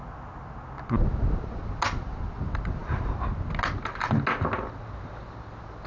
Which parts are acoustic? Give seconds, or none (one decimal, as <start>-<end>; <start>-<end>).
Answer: 0.0-5.9